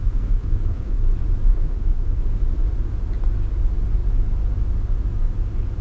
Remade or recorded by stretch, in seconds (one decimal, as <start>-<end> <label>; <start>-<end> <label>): 0.0-1.0 remade; 1.0-1.5 recorded; 1.5-2.2 remade; 2.2-5.8 recorded